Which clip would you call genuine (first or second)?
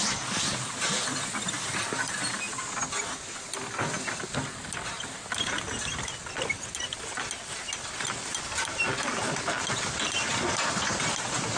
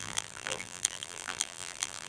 first